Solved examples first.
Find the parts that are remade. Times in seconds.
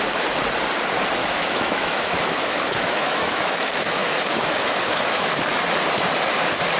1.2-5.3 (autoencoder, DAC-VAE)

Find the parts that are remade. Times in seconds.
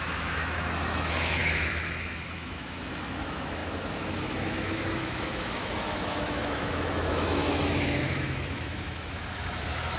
0.0-10.0 (autoencoder, DAC-VAE)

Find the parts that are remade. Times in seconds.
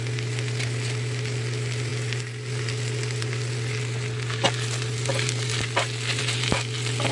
none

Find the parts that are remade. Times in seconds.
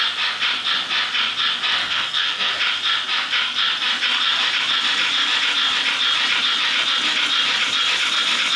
1.8-2.5 (codec, SNAC)